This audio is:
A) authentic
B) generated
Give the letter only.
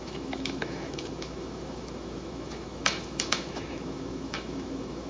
B